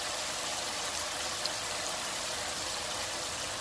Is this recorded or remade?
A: remade